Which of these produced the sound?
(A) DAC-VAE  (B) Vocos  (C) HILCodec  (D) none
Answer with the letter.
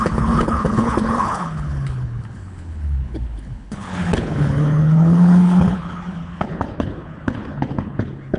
C